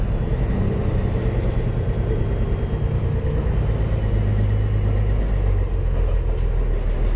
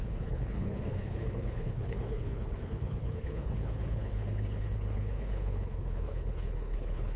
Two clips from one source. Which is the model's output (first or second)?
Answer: second